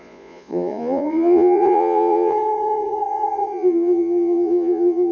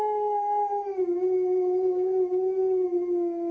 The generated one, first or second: first